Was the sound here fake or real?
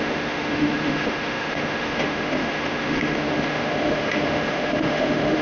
fake